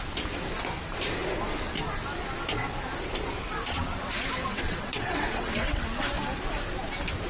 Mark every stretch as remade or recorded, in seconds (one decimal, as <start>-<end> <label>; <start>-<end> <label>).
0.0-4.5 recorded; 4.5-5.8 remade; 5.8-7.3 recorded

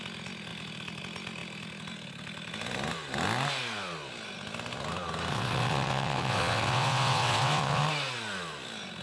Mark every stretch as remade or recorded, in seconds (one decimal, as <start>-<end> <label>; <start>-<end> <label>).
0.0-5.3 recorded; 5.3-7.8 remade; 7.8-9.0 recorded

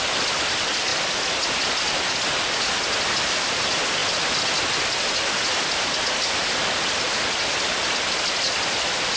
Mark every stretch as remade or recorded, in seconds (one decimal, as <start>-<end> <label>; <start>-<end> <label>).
0.0-9.2 recorded

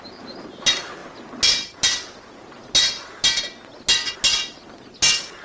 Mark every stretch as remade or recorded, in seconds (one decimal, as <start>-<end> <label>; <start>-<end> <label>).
0.0-5.4 recorded

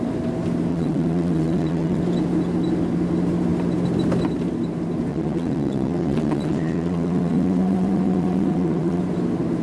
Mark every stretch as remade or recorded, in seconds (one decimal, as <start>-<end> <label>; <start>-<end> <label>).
0.0-0.7 recorded; 0.7-2.0 remade; 2.0-5.1 recorded; 5.1-9.0 remade; 9.0-9.6 recorded